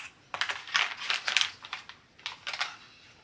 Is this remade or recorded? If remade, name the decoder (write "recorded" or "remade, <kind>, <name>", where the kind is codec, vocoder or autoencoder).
recorded